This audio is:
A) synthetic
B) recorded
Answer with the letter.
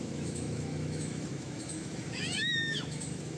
A